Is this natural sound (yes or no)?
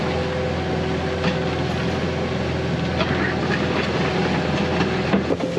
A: yes